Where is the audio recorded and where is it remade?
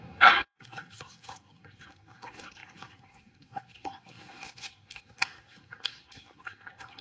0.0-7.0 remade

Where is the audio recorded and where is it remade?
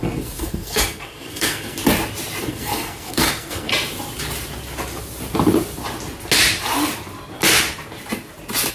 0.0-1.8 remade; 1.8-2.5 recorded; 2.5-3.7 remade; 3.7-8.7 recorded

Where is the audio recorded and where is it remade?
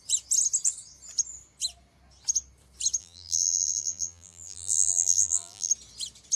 0.0-3.0 recorded; 3.0-5.7 remade; 5.7-6.4 recorded